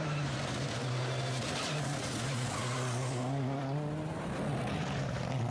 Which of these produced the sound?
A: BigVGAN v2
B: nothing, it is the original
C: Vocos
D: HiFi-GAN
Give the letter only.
B